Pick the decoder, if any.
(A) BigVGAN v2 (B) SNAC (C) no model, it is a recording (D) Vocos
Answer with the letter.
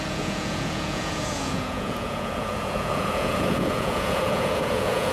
D